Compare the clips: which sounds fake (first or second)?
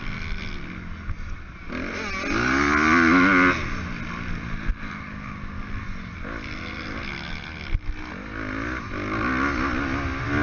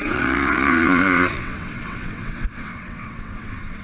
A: second